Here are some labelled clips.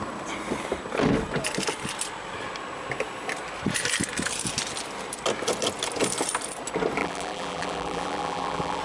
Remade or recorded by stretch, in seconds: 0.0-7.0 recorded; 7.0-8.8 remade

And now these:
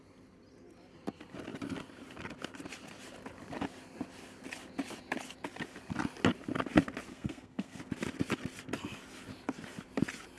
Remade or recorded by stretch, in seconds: 0.0-7.1 recorded; 7.1-7.8 remade; 7.8-10.4 recorded

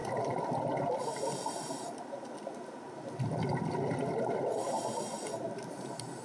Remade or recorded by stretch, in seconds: 0.0-6.2 recorded